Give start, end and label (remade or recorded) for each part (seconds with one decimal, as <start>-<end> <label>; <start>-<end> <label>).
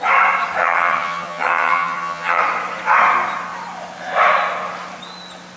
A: 0.0-0.6 recorded; 0.6-2.4 remade; 2.4-5.6 recorded